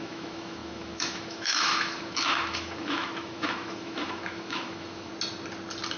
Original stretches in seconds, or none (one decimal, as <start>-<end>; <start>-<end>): 5.1-6.0

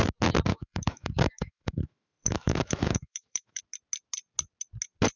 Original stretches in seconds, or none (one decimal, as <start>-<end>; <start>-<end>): 0.0-0.5; 3.6-5.2

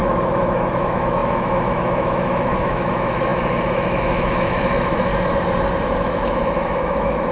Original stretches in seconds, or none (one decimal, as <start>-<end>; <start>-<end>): 5.1-5.7

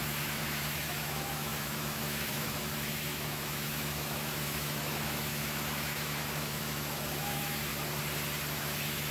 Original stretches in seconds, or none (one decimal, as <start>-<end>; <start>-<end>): 7.7-8.6